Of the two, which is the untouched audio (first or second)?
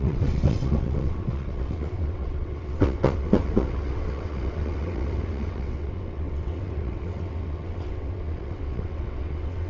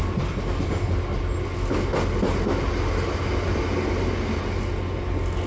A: second